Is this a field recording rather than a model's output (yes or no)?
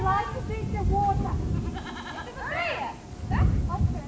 yes